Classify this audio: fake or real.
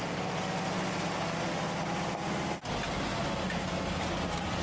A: real